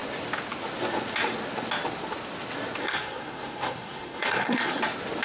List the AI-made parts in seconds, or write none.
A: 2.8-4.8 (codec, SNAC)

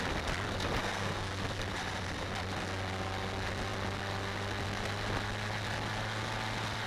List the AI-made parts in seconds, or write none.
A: 0.8-1.3 (codec, SNAC)

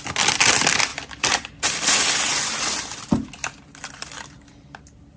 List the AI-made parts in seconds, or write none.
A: 0.9-1.9 (vocoder, BigVGAN v2)

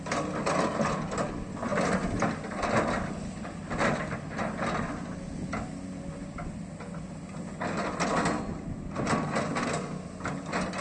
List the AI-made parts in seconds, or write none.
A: none

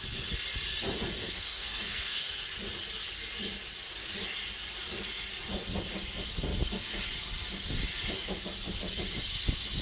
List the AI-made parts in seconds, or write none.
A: 1.2-2.4 (codec, SNAC)